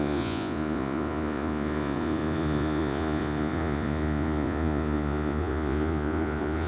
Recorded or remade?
remade